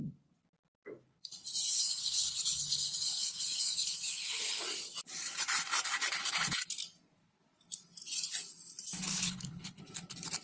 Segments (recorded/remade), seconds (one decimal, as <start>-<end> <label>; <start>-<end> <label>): 0.0-1.7 recorded; 1.7-4.6 remade; 4.6-9.1 recorded; 9.1-9.8 remade; 9.8-10.4 recorded

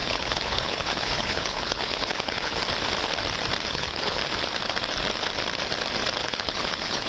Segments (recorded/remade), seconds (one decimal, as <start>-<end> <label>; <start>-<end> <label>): 0.0-2.6 remade; 2.6-3.7 recorded; 3.7-4.2 remade; 4.2-6.2 recorded; 6.2-7.1 remade